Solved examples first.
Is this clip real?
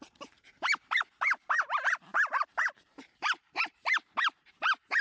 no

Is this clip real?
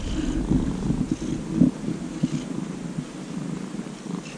yes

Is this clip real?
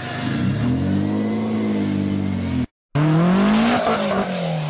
yes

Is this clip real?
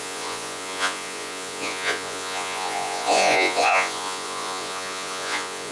no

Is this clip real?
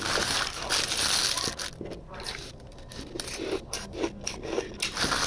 yes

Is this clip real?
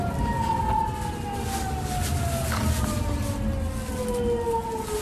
yes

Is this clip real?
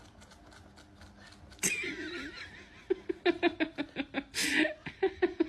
yes